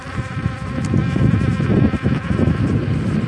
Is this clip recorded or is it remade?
remade